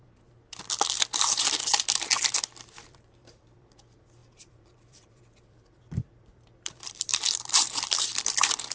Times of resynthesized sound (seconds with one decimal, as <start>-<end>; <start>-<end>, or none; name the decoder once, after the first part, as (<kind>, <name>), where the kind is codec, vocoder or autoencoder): 0.0-8.7 (vocoder, BigVGAN v2)